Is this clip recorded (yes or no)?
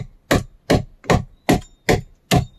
yes